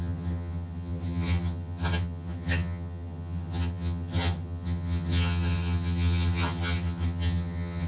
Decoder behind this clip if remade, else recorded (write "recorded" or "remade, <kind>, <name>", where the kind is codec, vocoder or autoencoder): remade, vocoder, HiFi-GAN